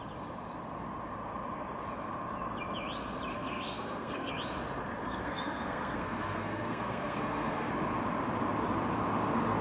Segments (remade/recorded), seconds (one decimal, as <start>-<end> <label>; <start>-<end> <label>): 0.0-3.3 recorded; 3.3-4.3 remade; 4.3-5.0 recorded; 5.0-7.7 remade; 7.7-9.6 recorded